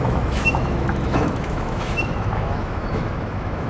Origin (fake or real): fake